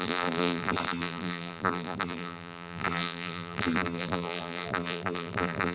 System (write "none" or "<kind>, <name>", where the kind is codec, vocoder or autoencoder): vocoder, BigVGAN v2